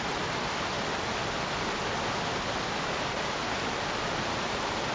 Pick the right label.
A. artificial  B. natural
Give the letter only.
B